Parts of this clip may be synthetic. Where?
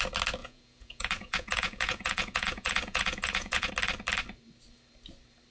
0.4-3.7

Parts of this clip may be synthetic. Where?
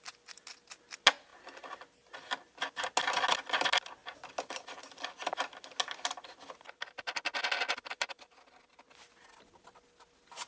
none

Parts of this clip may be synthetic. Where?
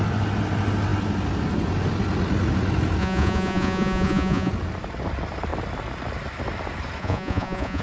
3.0-4.5; 7.0-7.8